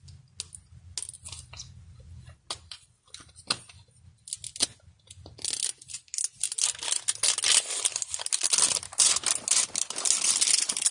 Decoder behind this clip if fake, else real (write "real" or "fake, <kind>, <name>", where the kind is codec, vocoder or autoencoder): real